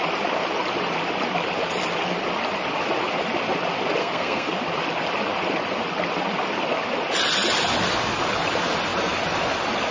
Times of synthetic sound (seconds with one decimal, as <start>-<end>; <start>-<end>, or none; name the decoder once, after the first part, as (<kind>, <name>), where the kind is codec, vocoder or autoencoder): 4.0-4.5 (codec, SNAC)